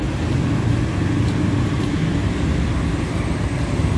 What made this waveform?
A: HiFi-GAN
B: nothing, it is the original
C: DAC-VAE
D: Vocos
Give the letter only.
B